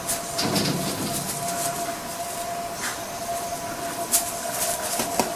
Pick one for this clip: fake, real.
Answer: real